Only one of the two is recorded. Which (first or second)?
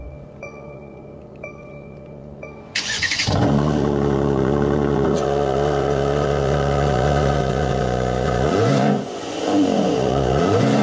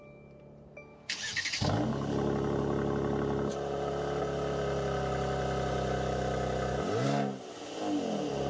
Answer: second